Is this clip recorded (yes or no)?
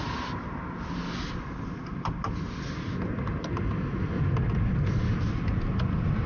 yes